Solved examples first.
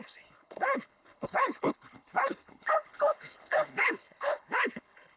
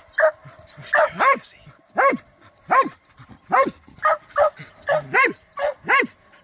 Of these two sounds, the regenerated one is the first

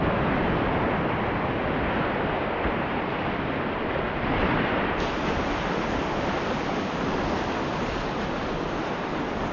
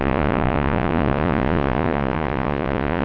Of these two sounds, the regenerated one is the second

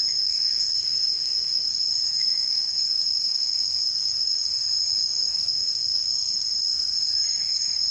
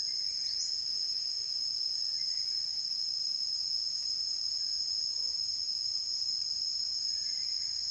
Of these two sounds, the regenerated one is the first